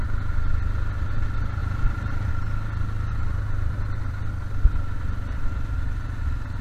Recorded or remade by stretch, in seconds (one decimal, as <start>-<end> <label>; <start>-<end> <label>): 0.0-1.6 recorded; 1.6-2.3 remade; 2.3-6.6 recorded